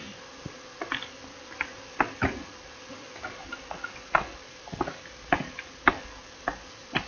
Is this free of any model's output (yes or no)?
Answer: yes